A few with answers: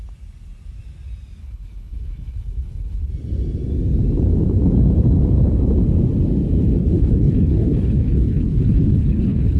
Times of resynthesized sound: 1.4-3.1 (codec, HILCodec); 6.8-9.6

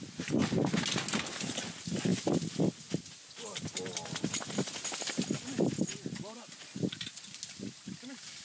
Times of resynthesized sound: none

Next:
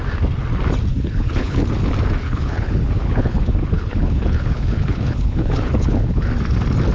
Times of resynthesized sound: 0.9-1.6 (codec, HILCodec); 2.2-6.3

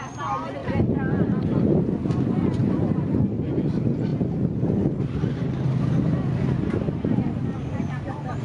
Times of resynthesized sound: none

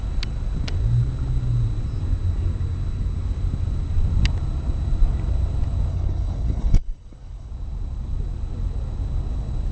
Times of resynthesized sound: 5.9-7.5 (codec, HILCodec)

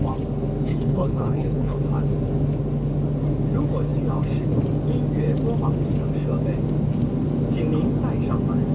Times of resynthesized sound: 0.7-1.8 (codec, HILCodec)

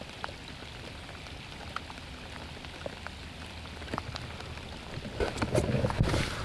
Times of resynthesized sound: none

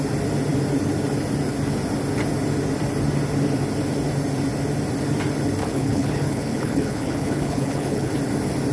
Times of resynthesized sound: 5.6-8.1 (codec, HILCodec)